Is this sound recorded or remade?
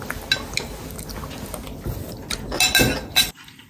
recorded